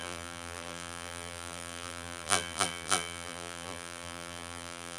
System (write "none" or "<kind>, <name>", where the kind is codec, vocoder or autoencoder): vocoder, BigVGAN v2